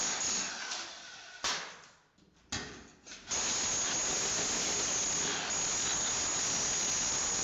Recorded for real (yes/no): yes